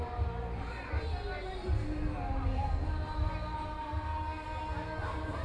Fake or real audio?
real